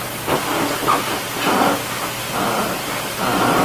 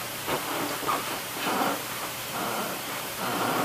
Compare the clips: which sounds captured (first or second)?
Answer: first